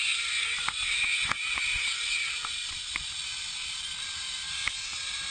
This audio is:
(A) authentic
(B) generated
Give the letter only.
A